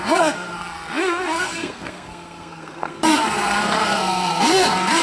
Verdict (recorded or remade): remade